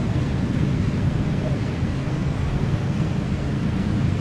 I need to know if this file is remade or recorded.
remade